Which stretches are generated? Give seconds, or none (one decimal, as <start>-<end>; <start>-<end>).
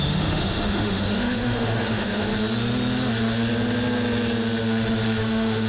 0.0-2.3; 5.2-5.7